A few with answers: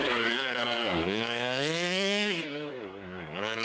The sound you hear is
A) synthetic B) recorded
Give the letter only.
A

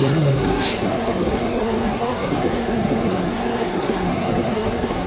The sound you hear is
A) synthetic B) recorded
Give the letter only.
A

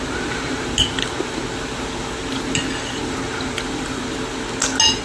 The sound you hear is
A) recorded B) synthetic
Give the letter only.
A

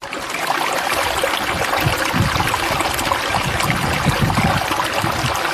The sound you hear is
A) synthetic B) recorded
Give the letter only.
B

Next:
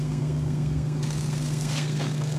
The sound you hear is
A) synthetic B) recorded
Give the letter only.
A